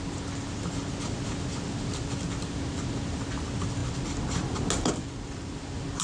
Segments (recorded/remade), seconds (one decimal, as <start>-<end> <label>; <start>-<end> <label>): 0.0-6.0 recorded